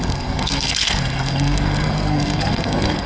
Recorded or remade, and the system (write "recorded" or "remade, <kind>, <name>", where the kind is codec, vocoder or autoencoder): remade, codec, SNAC